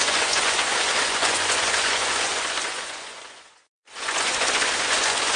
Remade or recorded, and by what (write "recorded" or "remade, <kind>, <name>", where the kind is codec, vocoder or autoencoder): remade, vocoder, Vocos